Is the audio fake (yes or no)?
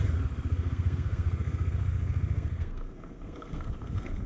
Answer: yes